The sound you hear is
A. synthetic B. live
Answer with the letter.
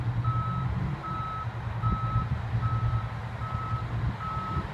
B